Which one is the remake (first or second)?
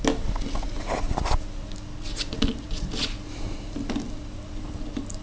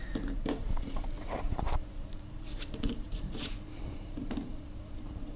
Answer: second